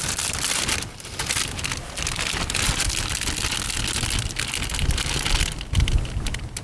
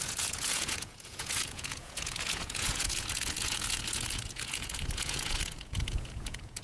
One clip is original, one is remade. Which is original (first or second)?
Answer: first